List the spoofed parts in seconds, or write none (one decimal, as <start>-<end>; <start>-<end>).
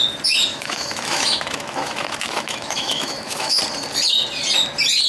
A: 0.5-3.6